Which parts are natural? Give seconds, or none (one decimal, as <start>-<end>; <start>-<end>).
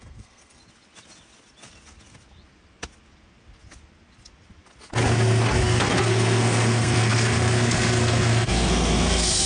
0.6-5.6